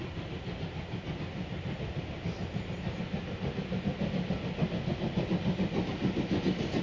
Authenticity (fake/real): real